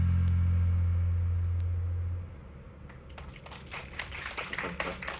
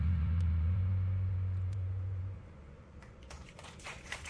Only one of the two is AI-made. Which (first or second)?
second